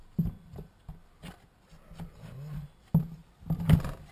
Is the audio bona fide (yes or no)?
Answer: yes